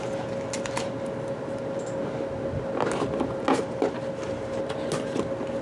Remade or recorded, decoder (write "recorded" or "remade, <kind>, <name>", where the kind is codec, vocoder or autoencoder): recorded